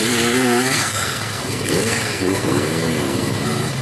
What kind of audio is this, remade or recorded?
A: remade